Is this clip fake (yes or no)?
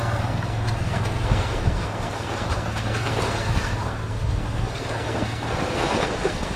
yes